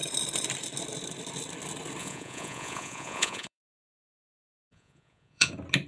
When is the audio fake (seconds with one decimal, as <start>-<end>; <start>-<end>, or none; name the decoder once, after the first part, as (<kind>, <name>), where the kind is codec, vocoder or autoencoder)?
2.0-5.5 (vocoder, Vocos)